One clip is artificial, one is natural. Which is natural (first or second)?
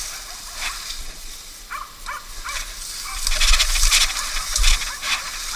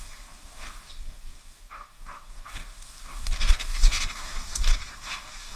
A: first